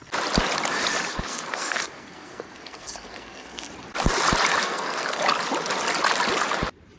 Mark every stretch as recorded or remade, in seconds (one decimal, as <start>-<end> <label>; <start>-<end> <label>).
0.0-1.1 recorded; 1.1-3.7 remade; 3.7-4.6 recorded; 4.6-5.2 remade; 5.2-7.0 recorded